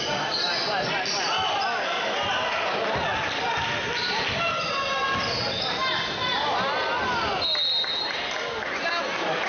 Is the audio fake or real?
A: real